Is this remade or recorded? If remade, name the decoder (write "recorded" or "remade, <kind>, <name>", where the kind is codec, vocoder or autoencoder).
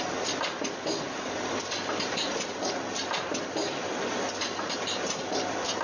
recorded